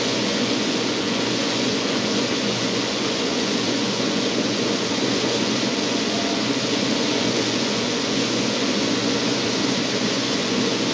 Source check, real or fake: fake